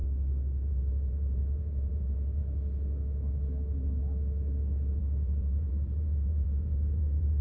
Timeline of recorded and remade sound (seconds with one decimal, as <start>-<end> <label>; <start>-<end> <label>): 0.0-0.7 recorded; 0.7-2.4 remade; 2.4-5.0 recorded; 5.0-7.4 remade

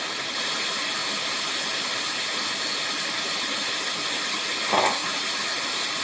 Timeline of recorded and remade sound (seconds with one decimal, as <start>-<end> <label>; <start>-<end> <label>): 0.0-6.0 recorded

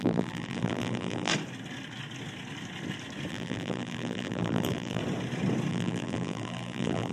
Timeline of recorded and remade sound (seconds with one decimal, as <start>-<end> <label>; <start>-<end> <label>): 0.0-1.3 remade; 1.3-3.3 recorded; 3.3-5.0 remade; 5.0-5.7 recorded; 5.7-7.1 remade